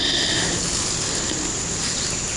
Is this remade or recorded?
recorded